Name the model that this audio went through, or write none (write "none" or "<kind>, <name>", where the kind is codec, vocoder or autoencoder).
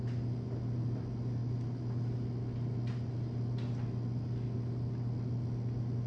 none